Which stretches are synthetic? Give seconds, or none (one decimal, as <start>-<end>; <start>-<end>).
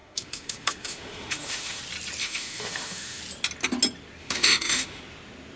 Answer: 0.0-1.8; 2.2-3.2; 4.2-5.0